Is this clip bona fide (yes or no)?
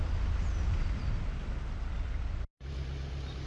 yes